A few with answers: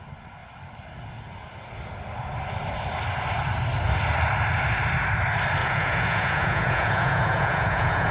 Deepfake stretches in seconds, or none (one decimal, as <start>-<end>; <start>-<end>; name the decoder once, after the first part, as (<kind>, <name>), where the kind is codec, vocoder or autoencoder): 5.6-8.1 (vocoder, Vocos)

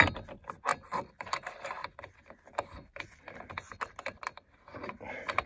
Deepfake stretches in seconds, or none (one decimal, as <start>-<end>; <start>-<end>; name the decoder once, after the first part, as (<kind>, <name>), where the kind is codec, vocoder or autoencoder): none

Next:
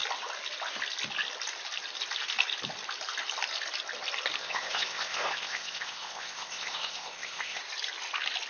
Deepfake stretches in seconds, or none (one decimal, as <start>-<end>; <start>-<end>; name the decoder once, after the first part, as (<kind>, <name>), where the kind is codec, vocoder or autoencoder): 4.4-7.6 (codec, ZipCodec)

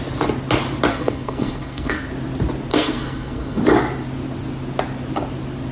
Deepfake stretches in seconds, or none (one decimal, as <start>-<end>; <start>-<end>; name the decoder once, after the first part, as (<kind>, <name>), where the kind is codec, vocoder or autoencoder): 0.9-2.1 (codec, SNAC); 2.7-3.6

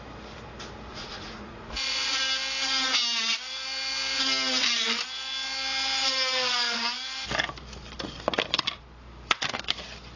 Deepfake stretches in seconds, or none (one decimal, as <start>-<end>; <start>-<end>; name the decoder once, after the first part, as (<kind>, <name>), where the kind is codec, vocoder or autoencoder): 0.9-2.1 (vocoder, Vocos)

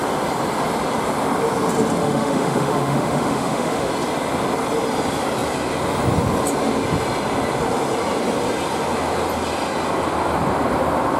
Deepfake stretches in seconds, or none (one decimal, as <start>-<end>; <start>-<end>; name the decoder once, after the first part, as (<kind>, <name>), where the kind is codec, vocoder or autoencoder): 2.0-3.9 (autoencoder, DAC-VAE)